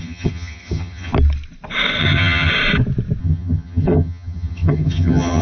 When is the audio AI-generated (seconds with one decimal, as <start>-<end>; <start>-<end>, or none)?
0.0-1.1; 2.0-2.5; 3.2-5.4